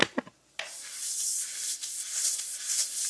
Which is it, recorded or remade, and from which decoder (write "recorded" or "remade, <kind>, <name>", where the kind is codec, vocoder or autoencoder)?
recorded